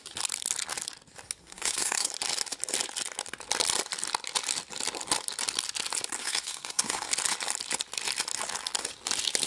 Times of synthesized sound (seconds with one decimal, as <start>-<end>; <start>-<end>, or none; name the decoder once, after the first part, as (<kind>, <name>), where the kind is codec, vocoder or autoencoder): 1.4-2.1 (codec, SNAC); 6.2-7.1